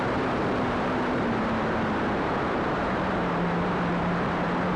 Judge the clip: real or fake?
fake